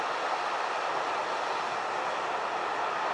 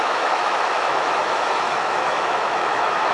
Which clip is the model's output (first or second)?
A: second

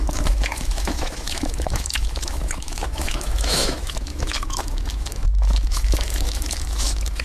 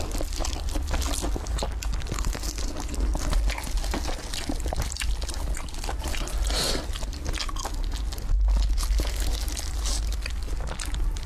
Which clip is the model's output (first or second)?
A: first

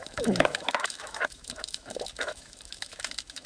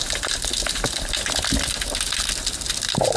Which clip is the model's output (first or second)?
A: first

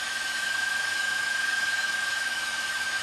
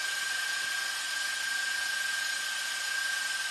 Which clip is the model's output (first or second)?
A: first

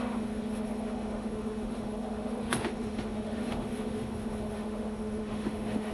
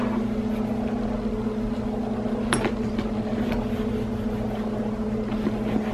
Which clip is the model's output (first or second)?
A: first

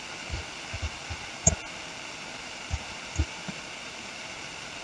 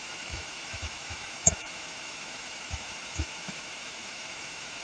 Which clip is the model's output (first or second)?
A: second